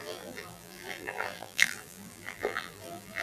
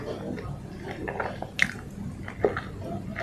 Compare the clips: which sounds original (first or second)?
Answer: second